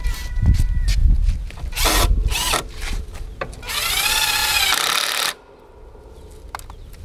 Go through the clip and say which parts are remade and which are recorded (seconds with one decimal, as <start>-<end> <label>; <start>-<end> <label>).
0.0-4.4 recorded; 4.4-5.2 remade; 5.2-7.0 recorded